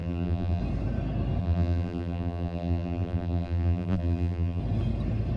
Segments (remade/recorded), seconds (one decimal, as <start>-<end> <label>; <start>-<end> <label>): 0.0-0.6 remade; 0.6-1.4 recorded; 1.4-4.6 remade; 4.6-5.4 recorded